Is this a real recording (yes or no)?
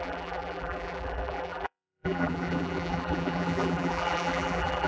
no